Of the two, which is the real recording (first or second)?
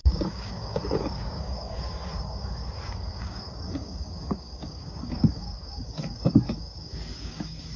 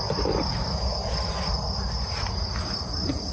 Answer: second